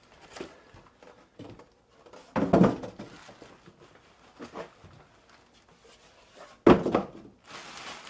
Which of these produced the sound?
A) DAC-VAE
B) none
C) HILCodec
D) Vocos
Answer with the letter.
B